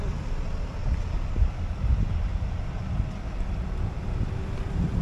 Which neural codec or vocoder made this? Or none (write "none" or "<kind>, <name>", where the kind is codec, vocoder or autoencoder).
none